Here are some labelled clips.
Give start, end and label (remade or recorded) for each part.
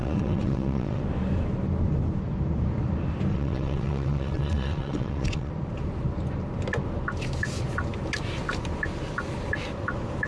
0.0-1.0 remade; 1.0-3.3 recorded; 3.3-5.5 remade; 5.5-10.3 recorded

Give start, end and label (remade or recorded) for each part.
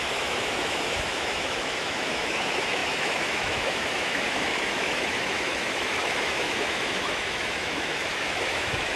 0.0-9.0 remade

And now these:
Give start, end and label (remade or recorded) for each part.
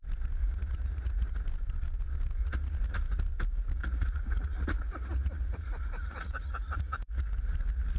0.0-0.4 recorded; 0.4-1.4 remade; 1.4-2.4 recorded; 2.4-3.0 remade; 3.0-3.8 recorded; 3.8-7.4 remade; 7.4-8.0 recorded